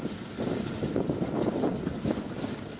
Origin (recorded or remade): recorded